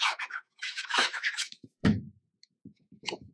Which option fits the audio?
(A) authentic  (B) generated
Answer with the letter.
B